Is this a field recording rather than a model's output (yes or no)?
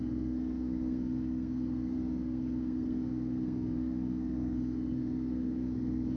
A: no